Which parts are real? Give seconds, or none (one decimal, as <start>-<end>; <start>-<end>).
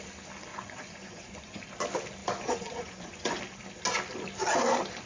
0.0-0.5; 1.6-2.2; 3.4-5.1